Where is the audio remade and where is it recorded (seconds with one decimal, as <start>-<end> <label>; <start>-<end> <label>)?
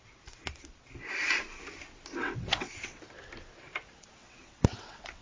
0.0-2.2 recorded; 2.2-3.0 remade; 3.0-4.2 recorded; 4.2-5.2 remade